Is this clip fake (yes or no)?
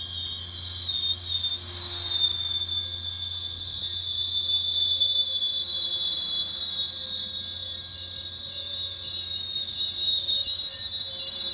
no